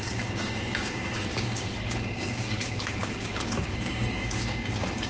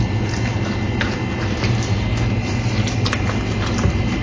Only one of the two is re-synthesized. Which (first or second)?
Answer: first